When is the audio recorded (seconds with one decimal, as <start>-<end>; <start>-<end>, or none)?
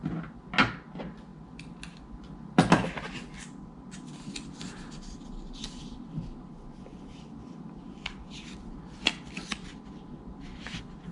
0.0-11.1